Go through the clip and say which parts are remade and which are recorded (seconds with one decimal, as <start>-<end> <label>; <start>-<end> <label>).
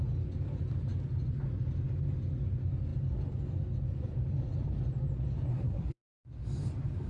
0.0-5.5 recorded; 5.5-6.1 remade; 6.1-7.1 recorded